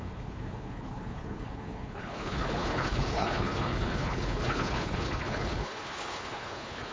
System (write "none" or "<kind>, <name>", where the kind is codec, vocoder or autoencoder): codec, HILCodec